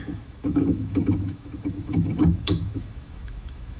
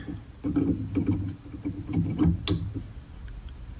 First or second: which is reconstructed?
first